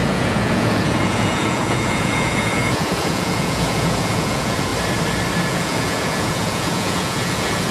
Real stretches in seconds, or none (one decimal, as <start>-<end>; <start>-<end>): 4.7-5.5